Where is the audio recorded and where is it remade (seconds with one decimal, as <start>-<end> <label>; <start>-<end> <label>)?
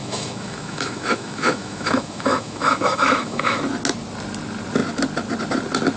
0.0-3.6 remade; 3.6-6.0 recorded